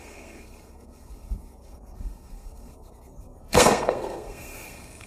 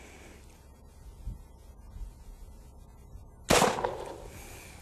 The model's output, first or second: first